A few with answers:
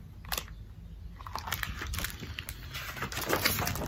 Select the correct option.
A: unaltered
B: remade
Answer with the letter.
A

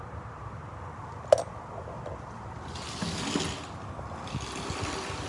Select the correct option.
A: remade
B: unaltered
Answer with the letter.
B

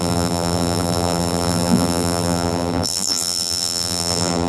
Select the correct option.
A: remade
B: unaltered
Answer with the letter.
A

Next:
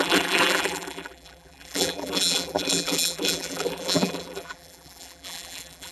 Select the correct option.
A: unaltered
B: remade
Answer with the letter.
B